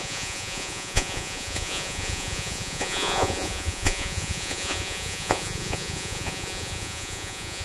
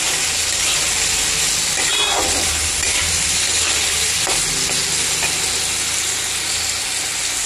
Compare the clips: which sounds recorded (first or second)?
second